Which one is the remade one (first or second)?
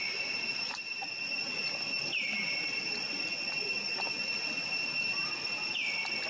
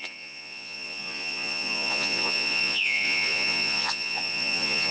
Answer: second